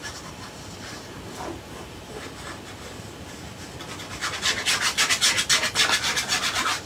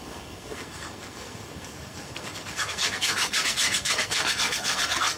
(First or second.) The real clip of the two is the first